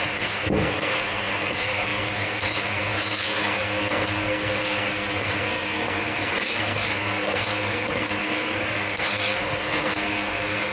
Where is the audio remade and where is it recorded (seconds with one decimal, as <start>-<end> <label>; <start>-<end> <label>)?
0.0-10.7 remade